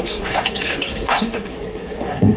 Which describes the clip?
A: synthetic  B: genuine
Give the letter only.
A